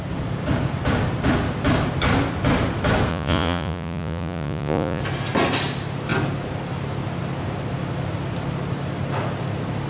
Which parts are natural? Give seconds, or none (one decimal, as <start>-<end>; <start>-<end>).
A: 0.0-3.1; 5.0-9.9